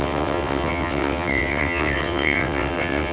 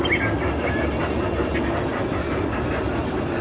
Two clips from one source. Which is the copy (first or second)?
first